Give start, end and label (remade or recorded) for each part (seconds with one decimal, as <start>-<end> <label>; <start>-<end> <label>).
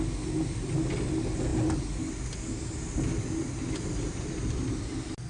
0.0-5.3 recorded